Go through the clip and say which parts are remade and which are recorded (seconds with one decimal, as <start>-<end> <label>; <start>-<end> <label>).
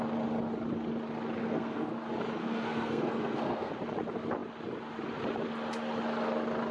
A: 0.0-1.4 recorded; 1.4-1.9 remade; 1.9-2.4 recorded; 2.4-3.7 remade; 3.7-6.7 recorded